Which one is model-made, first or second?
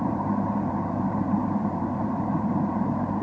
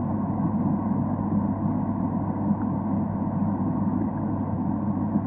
first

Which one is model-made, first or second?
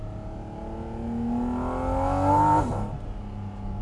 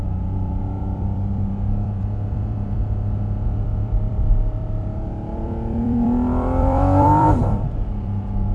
second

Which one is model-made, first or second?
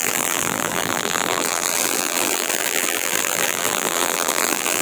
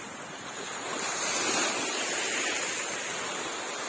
first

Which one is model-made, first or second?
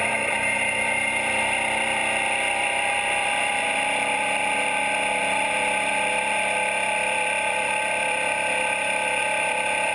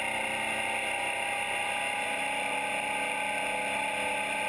first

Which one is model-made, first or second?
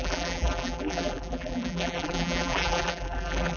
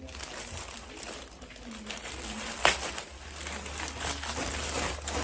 first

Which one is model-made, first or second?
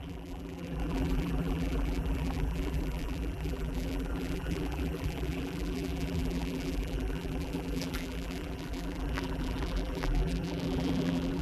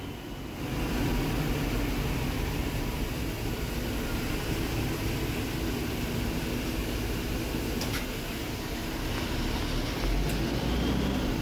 first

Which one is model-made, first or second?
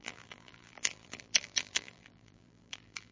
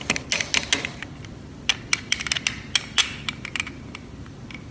first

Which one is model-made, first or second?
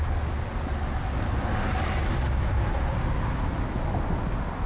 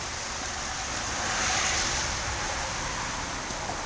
second